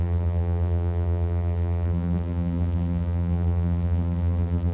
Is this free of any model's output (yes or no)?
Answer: no